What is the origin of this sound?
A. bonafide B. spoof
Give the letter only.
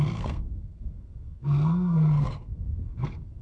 B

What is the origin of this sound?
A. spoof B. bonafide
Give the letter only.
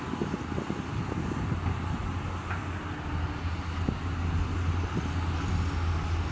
B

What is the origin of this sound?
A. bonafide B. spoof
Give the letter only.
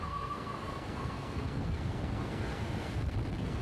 B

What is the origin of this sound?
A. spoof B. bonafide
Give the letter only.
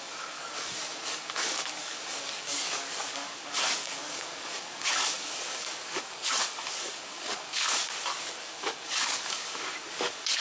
A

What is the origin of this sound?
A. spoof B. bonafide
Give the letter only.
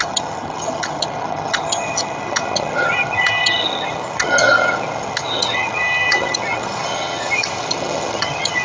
A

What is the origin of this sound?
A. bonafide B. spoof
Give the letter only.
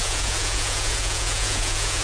B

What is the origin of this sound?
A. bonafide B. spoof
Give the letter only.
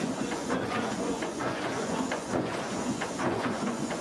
B